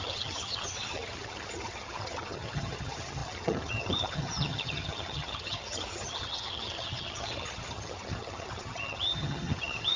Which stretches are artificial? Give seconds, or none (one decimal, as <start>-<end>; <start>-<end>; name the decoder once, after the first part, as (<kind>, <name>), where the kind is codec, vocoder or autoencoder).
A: 0.0-10.0 (vocoder, HiFi-GAN)